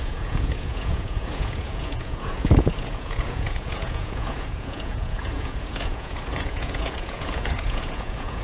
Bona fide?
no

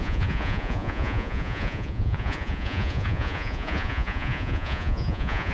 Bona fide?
no